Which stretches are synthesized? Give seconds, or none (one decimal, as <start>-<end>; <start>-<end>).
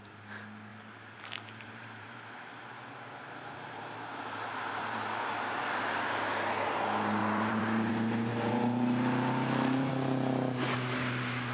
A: 0.7-5.2; 7.2-7.9; 8.3-9.9